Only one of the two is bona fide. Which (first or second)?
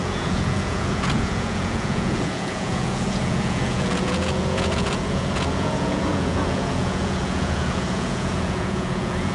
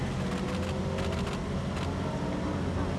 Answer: second